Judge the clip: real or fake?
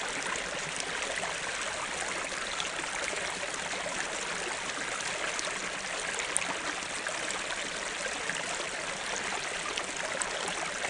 real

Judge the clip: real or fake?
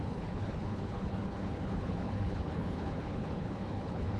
fake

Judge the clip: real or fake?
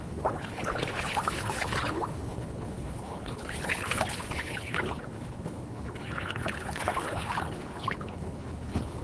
fake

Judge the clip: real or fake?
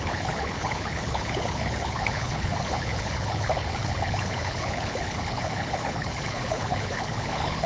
fake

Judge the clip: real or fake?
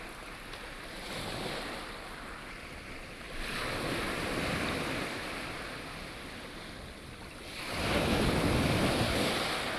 real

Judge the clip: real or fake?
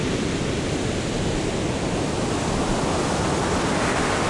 real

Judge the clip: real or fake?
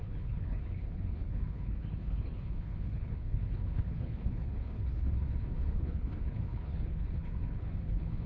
fake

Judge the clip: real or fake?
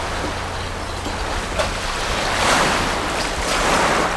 real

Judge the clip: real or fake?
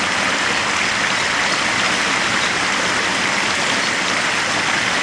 real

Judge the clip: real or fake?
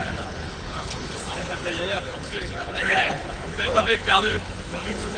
fake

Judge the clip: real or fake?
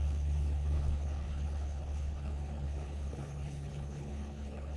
fake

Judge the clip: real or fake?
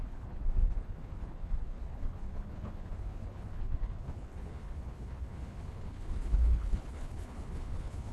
fake